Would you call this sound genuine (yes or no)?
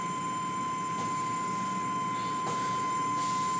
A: yes